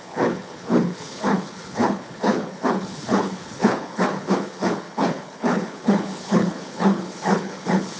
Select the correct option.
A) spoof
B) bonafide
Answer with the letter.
A